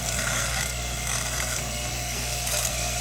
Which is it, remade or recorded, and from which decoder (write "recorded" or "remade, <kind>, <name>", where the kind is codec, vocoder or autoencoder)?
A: remade, codec, SNAC